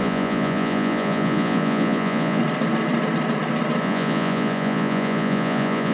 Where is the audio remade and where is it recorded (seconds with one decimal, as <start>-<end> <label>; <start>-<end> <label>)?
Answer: 0.0-2.4 remade; 2.4-3.8 recorded; 3.8-5.9 remade